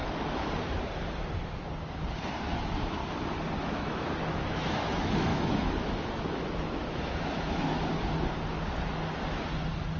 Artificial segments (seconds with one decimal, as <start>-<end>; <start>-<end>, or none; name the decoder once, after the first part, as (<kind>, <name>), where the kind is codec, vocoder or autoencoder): 2.4-3.0 (autoencoder, DAC-VAE); 3.6-7.7